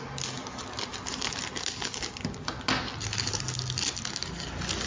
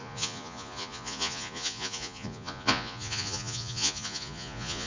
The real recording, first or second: first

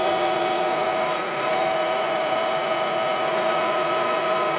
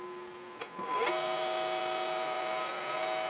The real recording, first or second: second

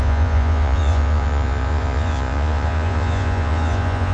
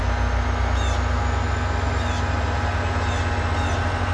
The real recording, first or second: second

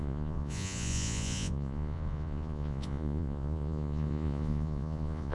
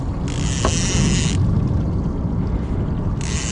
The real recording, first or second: second